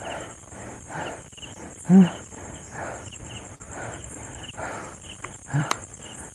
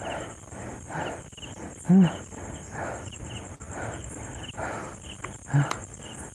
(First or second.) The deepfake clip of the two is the first